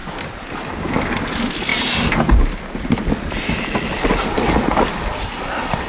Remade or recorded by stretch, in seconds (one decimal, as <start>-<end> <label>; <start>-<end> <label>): 0.0-1.7 remade; 1.7-5.2 recorded; 5.2-5.9 remade